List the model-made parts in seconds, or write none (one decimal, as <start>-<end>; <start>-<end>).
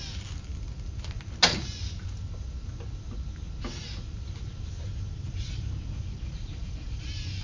none